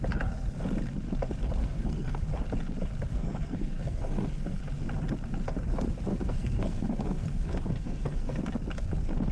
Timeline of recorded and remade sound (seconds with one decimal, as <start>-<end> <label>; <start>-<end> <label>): 0.0-1.6 recorded; 1.6-2.2 remade; 2.2-3.1 recorded; 3.1-4.6 remade; 4.6-6.1 recorded; 6.1-8.4 remade; 8.4-9.3 recorded